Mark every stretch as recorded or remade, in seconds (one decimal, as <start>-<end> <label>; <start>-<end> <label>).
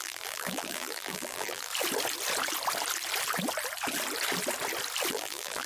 0.0-1.7 remade; 1.7-5.1 recorded; 5.1-5.7 remade